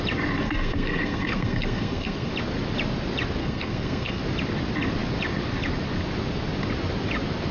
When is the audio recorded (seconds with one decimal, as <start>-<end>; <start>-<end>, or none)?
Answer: 0.0-0.4; 2.3-3.4; 4.2-7.5